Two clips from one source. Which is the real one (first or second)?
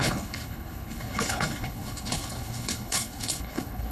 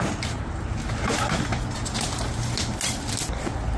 second